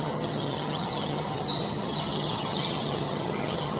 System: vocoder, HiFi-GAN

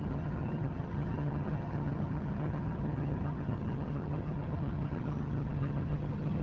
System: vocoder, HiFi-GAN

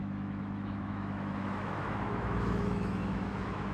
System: autoencoder, DAC-VAE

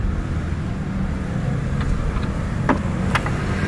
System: none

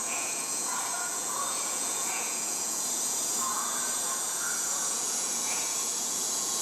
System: vocoder, Vocos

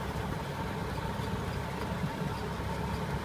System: none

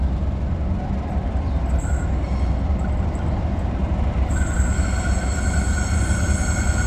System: none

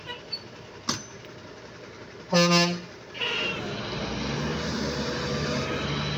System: none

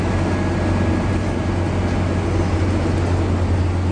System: none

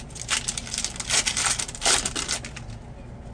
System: none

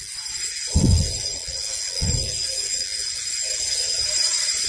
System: none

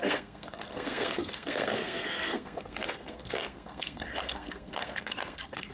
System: codec, SNAC